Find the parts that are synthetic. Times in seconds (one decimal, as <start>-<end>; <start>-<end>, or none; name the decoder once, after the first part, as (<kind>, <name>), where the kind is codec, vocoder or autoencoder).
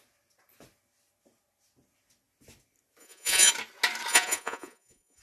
3.0-3.5 (vocoder, Vocos); 4.1-5.2